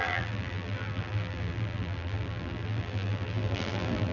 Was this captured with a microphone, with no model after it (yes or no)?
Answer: no